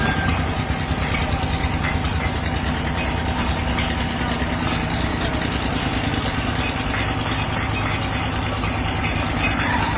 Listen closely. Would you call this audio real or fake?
real